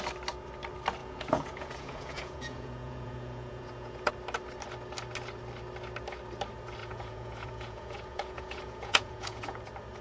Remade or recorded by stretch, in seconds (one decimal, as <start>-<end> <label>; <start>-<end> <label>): 0.0-1.0 recorded; 1.0-4.1 remade; 4.1-6.8 recorded; 6.8-9.6 remade; 9.6-10.0 recorded